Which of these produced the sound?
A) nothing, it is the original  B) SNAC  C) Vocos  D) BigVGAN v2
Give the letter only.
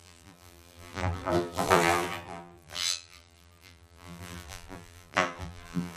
D